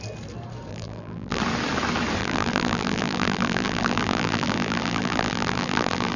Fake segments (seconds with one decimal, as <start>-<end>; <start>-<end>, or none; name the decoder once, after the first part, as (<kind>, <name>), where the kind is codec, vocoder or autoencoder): 0.7-1.4 (vocoder, BigVGAN v2); 2.2-6.2